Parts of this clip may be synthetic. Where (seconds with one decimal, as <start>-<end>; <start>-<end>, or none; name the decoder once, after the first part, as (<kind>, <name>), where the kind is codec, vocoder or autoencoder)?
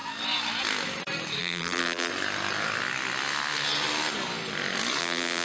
1.4-2.1 (vocoder, BigVGAN v2); 5.0-5.4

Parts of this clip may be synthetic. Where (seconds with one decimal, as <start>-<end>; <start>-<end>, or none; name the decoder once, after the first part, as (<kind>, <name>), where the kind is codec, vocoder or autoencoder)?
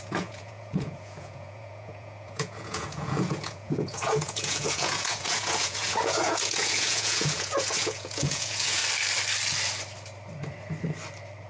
0.0-8.8 (vocoder, Vocos)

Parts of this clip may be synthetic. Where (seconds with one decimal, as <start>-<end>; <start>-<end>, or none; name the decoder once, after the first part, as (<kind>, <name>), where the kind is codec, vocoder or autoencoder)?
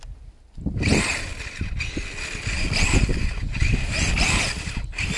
none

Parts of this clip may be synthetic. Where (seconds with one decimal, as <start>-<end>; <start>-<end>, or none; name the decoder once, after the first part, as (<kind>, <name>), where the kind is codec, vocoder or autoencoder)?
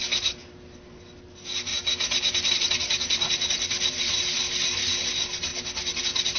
none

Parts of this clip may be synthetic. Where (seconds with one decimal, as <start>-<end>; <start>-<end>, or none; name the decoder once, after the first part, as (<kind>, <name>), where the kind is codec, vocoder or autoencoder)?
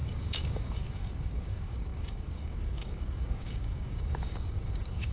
0.0-5.1 (codec, DAC)